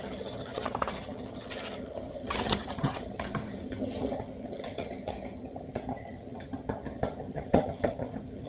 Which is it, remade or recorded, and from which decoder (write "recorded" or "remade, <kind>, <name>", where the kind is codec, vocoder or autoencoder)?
remade, vocoder, HiFi-GAN